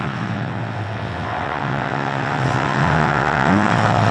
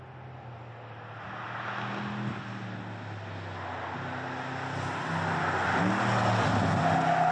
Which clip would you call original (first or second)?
second